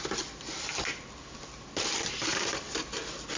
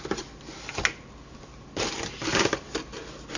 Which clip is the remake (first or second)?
first